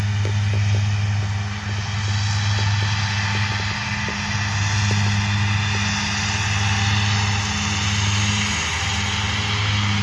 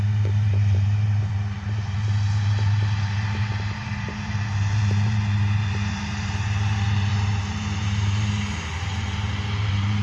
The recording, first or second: first